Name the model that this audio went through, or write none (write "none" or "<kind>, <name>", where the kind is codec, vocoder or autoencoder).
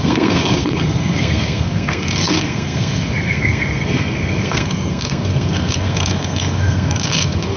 codec, SNAC